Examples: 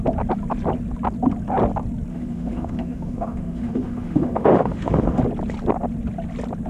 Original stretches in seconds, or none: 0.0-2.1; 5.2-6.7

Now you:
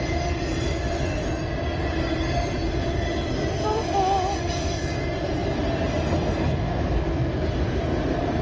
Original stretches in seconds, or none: 0.0-8.4